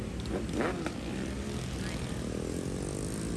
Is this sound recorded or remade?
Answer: recorded